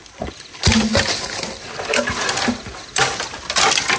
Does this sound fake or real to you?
real